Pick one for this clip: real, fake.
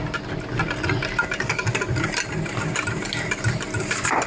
real